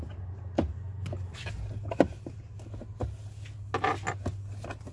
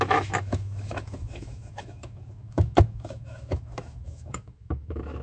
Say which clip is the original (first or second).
first